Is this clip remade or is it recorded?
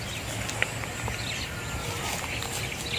recorded